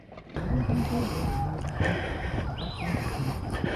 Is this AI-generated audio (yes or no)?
no